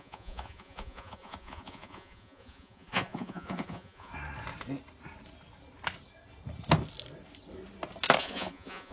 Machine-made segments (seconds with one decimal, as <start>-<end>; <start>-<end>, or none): 0.0-4.1; 8.2-8.9